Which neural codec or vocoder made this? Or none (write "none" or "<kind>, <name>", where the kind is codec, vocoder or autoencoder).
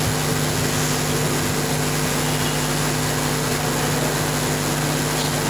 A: none